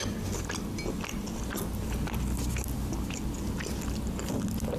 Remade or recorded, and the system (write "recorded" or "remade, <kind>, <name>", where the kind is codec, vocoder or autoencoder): recorded